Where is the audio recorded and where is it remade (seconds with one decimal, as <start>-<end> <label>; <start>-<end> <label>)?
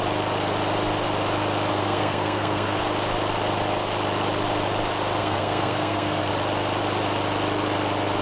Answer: 0.0-1.7 recorded; 1.7-2.8 remade; 2.8-5.2 recorded; 5.2-6.3 remade; 6.3-8.2 recorded